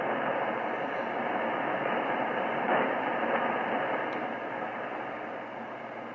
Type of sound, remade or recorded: recorded